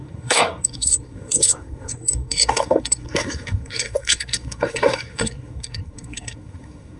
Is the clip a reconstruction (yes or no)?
yes